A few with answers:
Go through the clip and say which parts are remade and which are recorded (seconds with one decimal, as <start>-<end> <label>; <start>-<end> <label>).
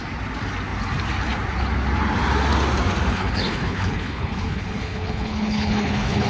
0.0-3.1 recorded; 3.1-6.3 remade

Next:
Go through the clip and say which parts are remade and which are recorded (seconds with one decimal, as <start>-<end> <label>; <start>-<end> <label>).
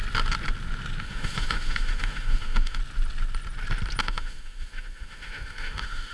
0.0-1.0 recorded; 1.0-2.8 remade; 2.8-4.0 recorded; 4.0-6.1 remade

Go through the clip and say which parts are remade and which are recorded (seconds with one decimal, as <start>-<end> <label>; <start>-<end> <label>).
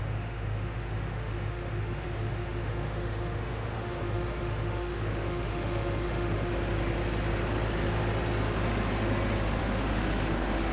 0.0-6.5 remade; 6.5-9.6 recorded; 9.6-10.7 remade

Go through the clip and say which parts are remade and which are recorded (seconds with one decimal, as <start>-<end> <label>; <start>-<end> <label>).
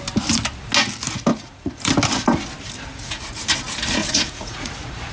0.0-1.3 recorded; 1.3-1.8 remade; 1.8-2.9 recorded; 2.9-3.4 remade; 3.4-4.0 recorded; 4.0-5.1 remade